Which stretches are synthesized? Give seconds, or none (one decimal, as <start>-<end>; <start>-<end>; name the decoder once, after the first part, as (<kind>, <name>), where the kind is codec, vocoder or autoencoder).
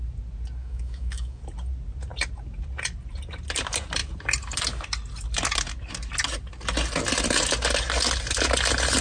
0.6-1.4 (autoencoder, DAC-VAE)